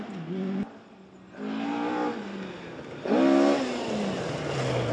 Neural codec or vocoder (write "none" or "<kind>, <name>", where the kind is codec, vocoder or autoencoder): none